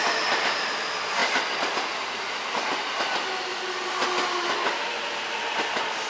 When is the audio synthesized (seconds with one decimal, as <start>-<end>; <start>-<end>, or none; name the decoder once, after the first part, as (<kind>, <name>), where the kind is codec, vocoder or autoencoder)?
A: none